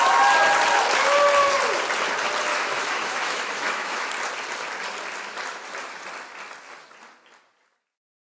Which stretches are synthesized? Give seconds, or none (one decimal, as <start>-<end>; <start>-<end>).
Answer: 2.5-4.1